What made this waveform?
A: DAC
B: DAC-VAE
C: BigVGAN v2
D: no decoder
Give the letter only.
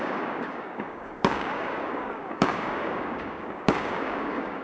A